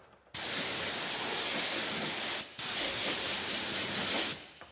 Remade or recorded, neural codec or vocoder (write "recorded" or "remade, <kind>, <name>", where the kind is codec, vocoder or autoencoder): recorded